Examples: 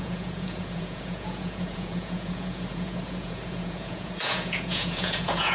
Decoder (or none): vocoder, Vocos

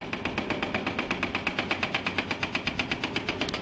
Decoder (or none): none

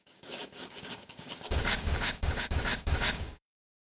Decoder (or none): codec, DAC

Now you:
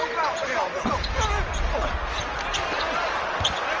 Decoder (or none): none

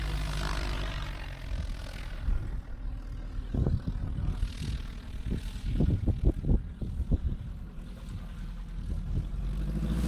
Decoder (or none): none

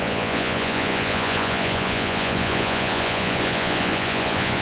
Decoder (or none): vocoder, Vocos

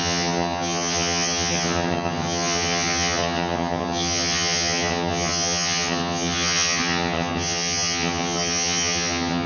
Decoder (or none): vocoder, HiFi-GAN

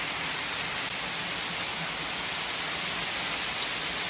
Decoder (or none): none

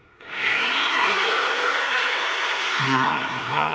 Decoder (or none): codec, SNAC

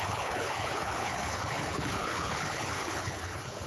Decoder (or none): codec, HILCodec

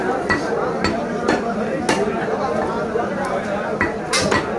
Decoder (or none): none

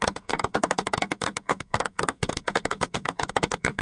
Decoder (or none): codec, SNAC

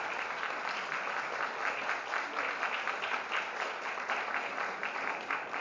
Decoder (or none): none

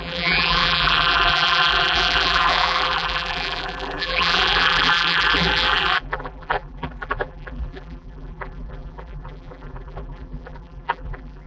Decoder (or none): vocoder, BigVGAN v2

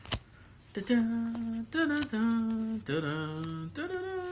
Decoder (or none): none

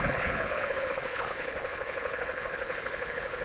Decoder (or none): codec, HILCodec